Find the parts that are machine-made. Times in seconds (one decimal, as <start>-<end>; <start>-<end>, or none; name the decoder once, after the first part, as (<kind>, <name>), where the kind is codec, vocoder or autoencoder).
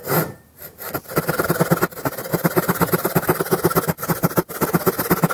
0.0-0.8 (vocoder, BigVGAN v2); 2.3-3.4